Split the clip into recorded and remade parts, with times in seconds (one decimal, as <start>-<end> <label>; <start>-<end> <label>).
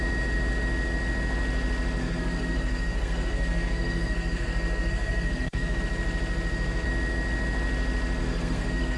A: 0.0-2.0 recorded; 2.0-5.8 remade; 5.8-8.2 recorded; 8.2-9.0 remade